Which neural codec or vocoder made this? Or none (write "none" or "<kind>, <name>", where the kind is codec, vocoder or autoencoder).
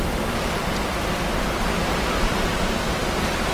none